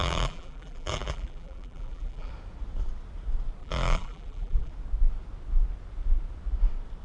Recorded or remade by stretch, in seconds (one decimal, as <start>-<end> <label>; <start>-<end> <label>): 0.0-2.3 remade; 2.3-3.6 recorded; 3.6-4.7 remade; 4.7-7.0 recorded